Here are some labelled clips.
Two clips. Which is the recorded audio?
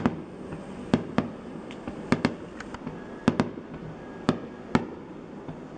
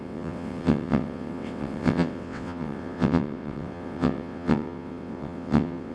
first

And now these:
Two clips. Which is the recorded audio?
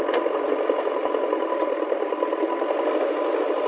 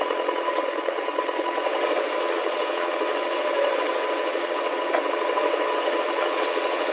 first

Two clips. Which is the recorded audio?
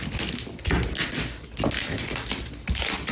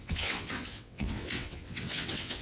first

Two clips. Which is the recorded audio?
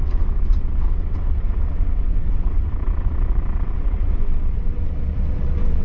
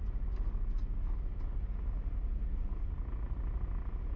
second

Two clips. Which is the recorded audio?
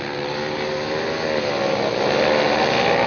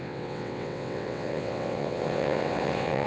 first